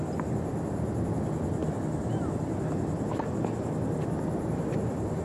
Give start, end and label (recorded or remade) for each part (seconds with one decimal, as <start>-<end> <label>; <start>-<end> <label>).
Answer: 0.0-5.2 recorded